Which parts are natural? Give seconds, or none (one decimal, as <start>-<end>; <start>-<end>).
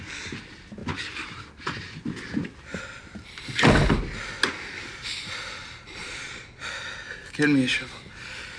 0.0-6.0; 6.6-8.6